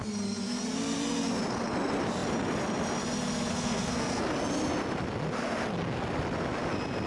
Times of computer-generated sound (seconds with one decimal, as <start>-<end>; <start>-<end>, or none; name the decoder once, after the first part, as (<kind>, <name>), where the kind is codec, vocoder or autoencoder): 3.5-4.2 (codec, SNAC)